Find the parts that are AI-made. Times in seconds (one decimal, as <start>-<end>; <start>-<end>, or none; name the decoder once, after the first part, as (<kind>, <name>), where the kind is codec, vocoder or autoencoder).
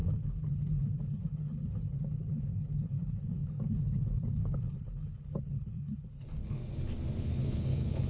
0.0-6.6 (codec, HILCodec); 7.2-8.1